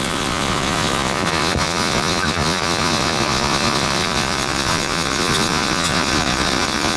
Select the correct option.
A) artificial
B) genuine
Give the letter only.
A